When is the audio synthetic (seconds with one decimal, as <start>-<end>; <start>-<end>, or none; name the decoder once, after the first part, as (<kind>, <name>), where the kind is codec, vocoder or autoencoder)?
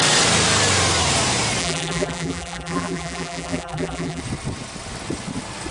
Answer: 1.6-4.2 (vocoder, BigVGAN v2)